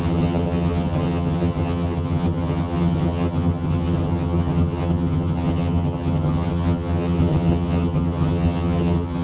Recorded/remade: remade